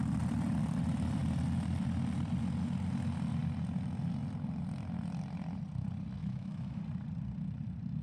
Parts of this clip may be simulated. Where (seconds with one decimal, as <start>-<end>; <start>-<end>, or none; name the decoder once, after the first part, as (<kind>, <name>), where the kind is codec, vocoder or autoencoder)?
6.2-6.8 (autoencoder, DAC-VAE)